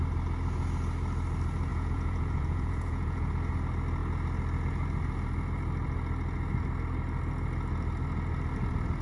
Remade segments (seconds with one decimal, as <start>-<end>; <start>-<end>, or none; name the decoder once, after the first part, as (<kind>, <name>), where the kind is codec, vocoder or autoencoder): 1.7-3.3 (vocoder, Vocos)